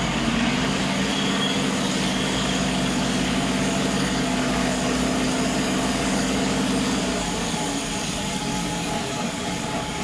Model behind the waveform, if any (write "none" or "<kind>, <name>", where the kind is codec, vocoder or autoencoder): codec, DAC